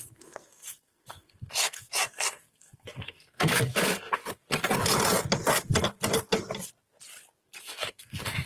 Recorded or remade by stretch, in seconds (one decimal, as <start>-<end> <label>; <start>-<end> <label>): 0.0-4.2 remade; 4.2-7.6 recorded; 7.6-8.5 remade